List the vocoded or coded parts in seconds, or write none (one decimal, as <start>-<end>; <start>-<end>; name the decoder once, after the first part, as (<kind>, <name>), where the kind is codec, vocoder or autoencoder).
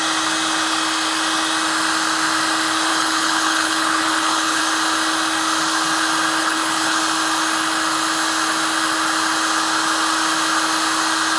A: 2.9-4.6 (codec, HILCodec); 6.4-7.0